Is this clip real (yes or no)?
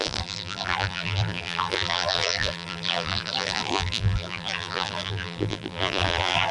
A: no